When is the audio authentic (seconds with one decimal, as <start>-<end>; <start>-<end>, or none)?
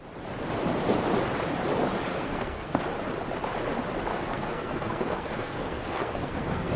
0.0-2.1; 2.8-4.1